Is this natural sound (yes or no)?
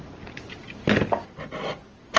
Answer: yes